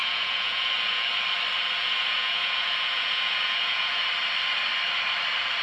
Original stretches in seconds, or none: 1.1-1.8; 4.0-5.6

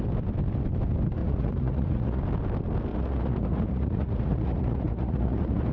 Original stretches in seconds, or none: 0.0-1.2; 2.2-2.9

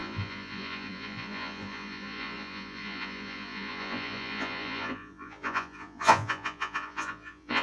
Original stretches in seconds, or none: none